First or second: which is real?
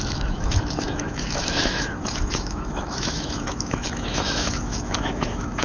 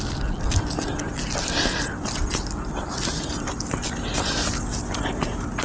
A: second